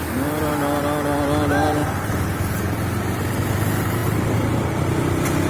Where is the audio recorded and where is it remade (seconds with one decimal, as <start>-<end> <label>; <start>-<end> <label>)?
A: 0.0-1.8 recorded; 1.8-2.5 remade; 2.5-5.5 recorded